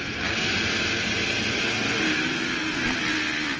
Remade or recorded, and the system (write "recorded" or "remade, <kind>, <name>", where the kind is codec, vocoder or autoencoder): recorded